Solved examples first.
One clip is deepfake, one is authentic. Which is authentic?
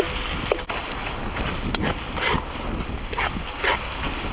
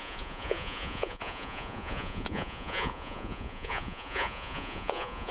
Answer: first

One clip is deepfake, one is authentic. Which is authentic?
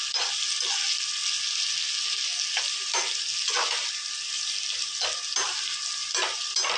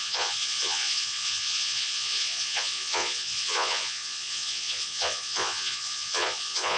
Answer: first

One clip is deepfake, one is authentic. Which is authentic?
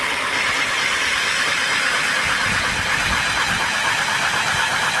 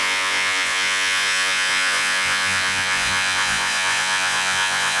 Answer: first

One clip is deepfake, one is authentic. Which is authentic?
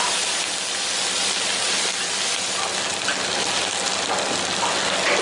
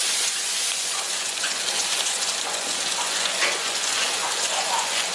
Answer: first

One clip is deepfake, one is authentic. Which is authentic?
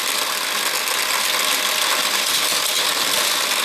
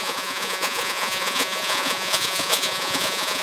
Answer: first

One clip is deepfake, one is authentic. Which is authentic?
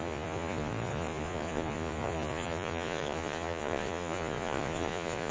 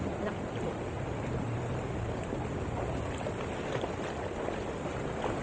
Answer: second